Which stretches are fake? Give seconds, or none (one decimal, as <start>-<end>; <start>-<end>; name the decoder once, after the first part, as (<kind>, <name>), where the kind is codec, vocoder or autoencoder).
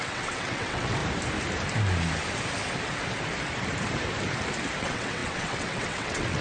0.0-1.0 (vocoder, WaveNeXt); 4.8-6.4